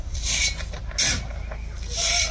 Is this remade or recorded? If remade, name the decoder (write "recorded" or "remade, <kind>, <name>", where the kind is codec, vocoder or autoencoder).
recorded